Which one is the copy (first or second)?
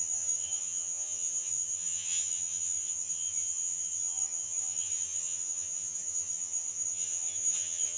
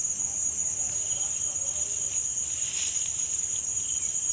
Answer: first